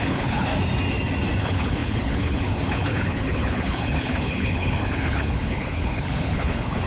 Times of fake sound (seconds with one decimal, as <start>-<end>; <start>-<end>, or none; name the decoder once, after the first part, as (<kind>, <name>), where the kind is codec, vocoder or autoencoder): 0.0-0.5 (codec, HILCodec); 1.4-6.9